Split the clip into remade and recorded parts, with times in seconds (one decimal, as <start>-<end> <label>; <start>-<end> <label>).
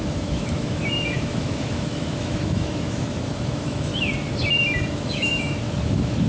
0.0-3.9 remade; 3.9-4.9 recorded; 4.9-6.3 remade